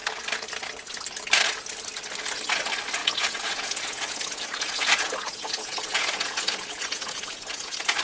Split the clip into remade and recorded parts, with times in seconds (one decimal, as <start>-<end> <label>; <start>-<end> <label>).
0.0-3.0 recorded; 3.0-8.0 remade